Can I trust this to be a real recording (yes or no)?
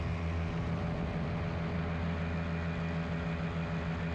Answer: yes